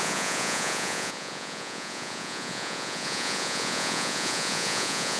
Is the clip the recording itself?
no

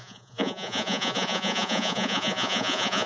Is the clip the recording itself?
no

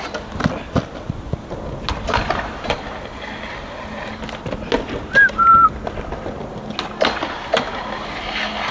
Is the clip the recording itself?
yes